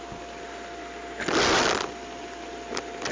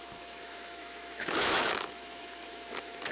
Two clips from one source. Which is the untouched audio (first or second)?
first